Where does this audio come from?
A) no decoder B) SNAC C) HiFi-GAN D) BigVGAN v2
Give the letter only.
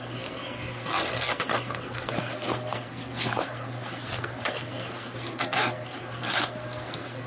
B